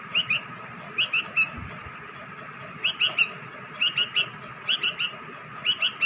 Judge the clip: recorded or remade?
recorded